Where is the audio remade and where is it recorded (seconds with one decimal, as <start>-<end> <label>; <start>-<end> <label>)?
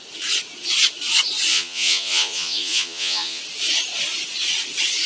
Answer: 0.0-1.5 recorded; 1.5-3.4 remade; 3.4-5.1 recorded